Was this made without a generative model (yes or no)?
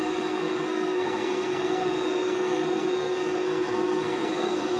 no